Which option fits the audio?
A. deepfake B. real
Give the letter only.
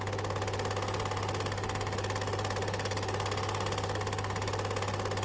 B